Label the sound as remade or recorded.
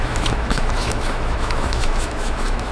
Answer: remade